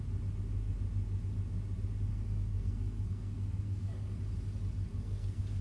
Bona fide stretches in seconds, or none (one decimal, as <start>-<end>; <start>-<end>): 0.0-2.1; 4.2-4.9